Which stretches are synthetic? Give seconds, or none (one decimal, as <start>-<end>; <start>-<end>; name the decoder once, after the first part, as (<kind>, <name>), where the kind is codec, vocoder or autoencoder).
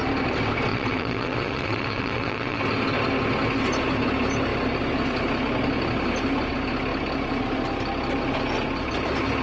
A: 0.7-2.6 (vocoder, WaveNeXt)